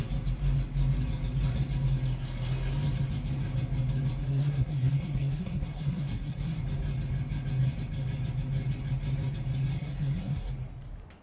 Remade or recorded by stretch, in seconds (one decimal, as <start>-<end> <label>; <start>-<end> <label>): 0.0-4.2 recorded; 4.2-6.6 remade; 6.6-9.7 recorded; 9.7-10.5 remade; 10.5-11.2 recorded